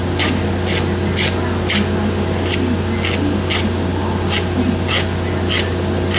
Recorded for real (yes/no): yes